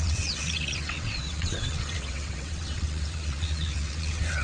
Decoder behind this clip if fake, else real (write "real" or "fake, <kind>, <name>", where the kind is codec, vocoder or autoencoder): fake, vocoder, WaveNeXt